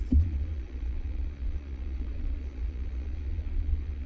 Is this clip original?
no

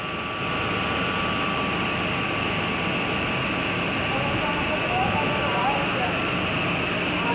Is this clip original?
yes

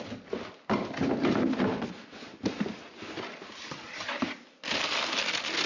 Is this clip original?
yes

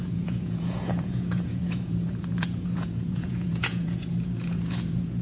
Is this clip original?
no